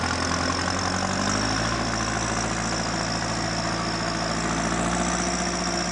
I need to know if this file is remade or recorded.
recorded